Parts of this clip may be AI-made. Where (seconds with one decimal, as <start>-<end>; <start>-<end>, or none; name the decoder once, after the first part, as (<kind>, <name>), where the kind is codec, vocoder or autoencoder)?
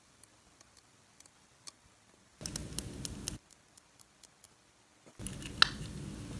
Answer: none